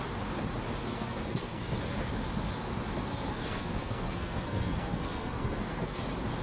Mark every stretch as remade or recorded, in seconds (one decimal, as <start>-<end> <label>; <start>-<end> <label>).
0.0-0.8 recorded; 0.8-1.6 remade; 1.6-3.0 recorded; 3.0-6.0 remade; 6.0-6.4 recorded